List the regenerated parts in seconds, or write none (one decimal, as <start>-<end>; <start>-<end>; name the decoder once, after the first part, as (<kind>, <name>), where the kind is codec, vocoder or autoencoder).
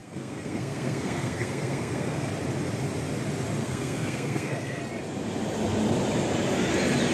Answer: 0.0-2.3 (codec, SNAC); 3.6-4.8